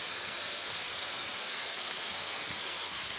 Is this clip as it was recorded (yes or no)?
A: no